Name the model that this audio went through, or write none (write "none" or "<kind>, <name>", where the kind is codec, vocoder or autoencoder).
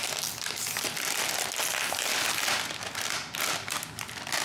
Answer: none